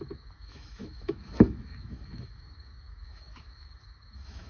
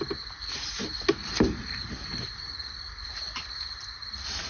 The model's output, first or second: first